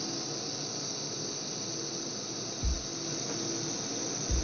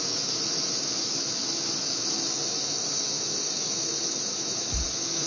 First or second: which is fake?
second